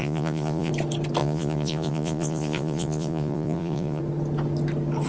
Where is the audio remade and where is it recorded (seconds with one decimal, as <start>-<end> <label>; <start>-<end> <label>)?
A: 0.0-0.7 remade; 0.7-1.2 recorded; 1.2-4.0 remade; 4.0-5.1 recorded